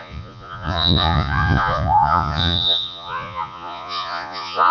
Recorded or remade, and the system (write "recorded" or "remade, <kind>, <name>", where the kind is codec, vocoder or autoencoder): remade, vocoder, Vocos